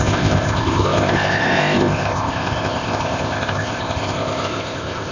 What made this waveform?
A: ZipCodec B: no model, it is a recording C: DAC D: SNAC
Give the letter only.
A